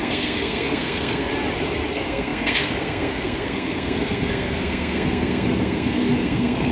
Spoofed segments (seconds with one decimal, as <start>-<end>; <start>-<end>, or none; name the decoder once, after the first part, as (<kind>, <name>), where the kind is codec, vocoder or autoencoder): 0.0-1.3 (codec, SNAC); 1.9-6.7